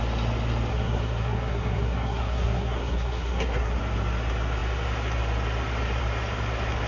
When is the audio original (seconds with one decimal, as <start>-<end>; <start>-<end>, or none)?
0.0-0.7; 3.8-6.9